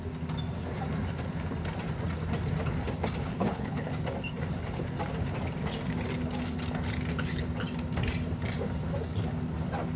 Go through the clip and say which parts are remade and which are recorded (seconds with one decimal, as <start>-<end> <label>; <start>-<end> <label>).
0.0-3.3 recorded; 3.3-3.9 remade; 3.9-10.0 recorded